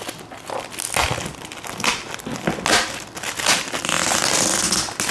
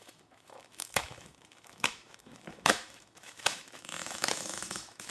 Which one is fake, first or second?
second